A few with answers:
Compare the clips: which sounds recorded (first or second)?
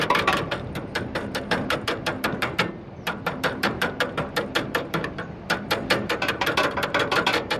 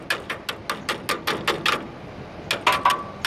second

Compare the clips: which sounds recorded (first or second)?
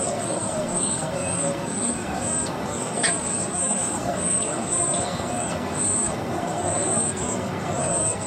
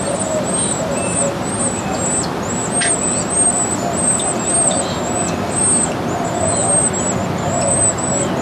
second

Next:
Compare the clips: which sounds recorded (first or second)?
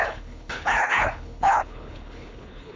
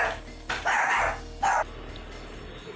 second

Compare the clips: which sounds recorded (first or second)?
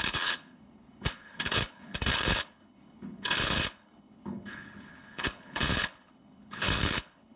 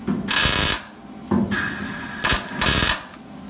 second